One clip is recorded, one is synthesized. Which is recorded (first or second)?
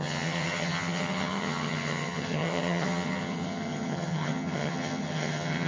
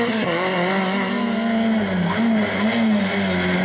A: second